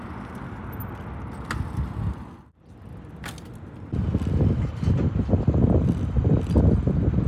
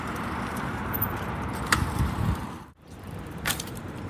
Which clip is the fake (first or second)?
second